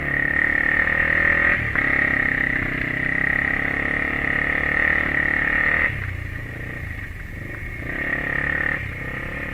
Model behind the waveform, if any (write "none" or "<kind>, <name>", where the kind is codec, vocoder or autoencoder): none